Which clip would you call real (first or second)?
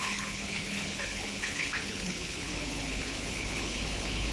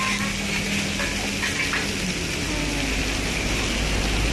second